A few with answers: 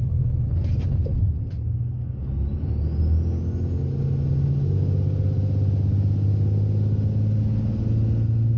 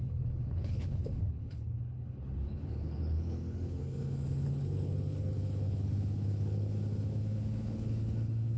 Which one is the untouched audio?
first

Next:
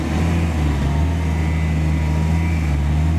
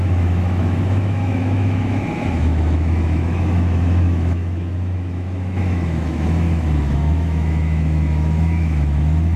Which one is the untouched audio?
first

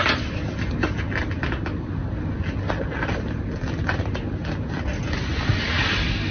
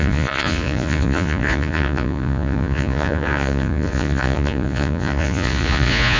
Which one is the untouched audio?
first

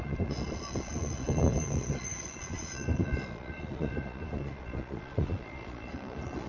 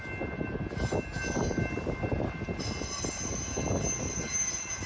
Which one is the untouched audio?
second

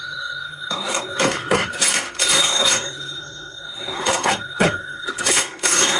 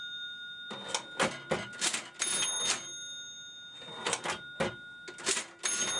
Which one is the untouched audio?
second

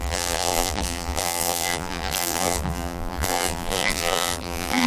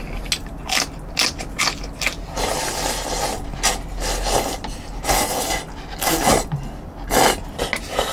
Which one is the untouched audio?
second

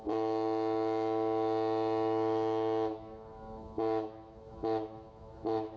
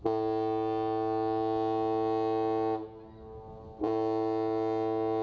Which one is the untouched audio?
second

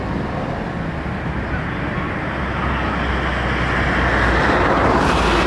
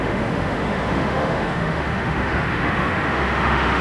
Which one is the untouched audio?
first